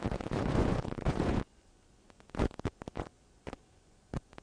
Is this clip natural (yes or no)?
no